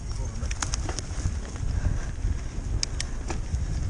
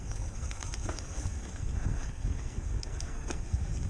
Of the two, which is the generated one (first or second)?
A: second